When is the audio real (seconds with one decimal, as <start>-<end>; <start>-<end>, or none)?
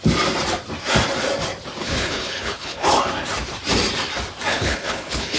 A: 0.0-1.8; 2.9-4.5